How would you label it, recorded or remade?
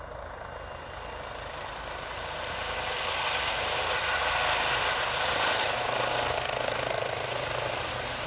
recorded